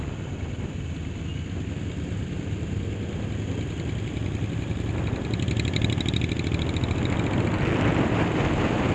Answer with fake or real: real